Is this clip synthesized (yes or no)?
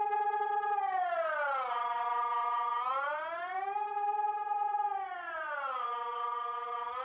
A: no